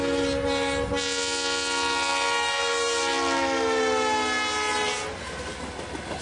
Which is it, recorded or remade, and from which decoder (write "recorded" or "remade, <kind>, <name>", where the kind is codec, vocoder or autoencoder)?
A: recorded